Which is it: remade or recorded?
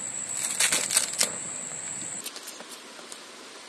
recorded